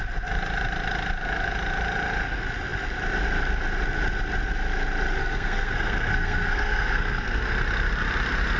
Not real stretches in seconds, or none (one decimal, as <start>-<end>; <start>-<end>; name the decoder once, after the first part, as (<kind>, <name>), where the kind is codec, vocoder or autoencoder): 5.2-7.4 (codec, SNAC)